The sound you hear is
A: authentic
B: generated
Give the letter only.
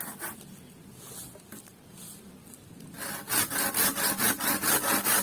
A